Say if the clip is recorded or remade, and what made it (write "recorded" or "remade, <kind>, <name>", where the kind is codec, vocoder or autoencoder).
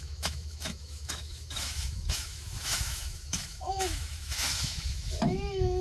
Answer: remade, autoencoder, DAC-VAE